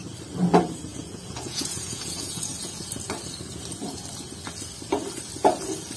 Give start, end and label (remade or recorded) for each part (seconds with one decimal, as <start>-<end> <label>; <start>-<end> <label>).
0.0-0.9 recorded; 0.9-3.1 remade; 3.1-6.0 recorded